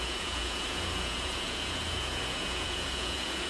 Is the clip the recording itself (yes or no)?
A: no